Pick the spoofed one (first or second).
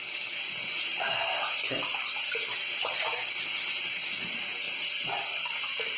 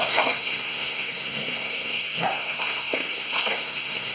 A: second